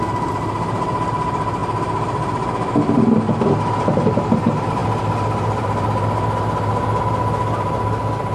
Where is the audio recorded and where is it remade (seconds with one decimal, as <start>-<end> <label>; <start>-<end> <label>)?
0.0-8.3 recorded